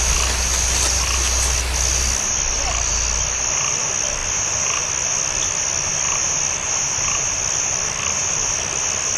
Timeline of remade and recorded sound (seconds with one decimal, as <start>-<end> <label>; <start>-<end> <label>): 0.0-9.2 recorded